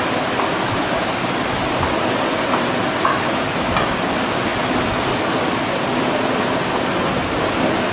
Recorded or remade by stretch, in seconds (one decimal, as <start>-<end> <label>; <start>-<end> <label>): 0.0-7.9 recorded